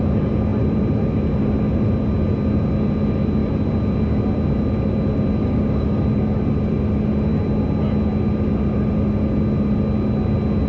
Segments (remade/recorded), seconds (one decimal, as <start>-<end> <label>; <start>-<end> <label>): 0.0-5.4 recorded; 5.4-6.0 remade; 6.0-10.7 recorded